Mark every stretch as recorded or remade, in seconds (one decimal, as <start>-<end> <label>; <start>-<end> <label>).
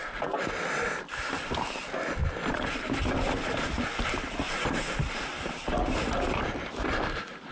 0.0-7.5 recorded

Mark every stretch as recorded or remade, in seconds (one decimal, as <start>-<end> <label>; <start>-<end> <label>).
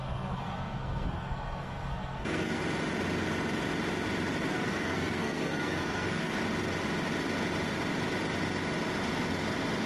0.0-2.6 remade; 2.6-4.5 recorded; 4.5-6.4 remade; 6.4-9.9 recorded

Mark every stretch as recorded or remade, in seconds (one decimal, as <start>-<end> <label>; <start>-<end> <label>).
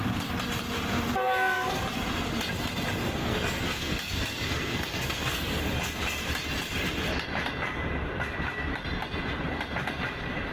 0.0-1.2 recorded; 1.2-1.8 remade; 1.8-3.2 recorded; 3.2-5.6 remade; 5.6-10.5 recorded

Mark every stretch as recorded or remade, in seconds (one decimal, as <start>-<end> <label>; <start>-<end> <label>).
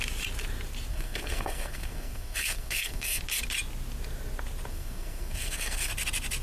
0.0-0.9 recorded; 0.9-3.2 remade; 3.2-4.7 recorded; 4.7-5.9 remade; 5.9-6.4 recorded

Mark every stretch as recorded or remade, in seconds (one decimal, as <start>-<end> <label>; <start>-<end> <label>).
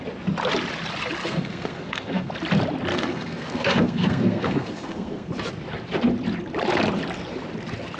0.0-1.2 recorded; 1.2-2.3 remade; 2.3-2.9 recorded; 2.9-5.3 remade; 5.3-8.0 recorded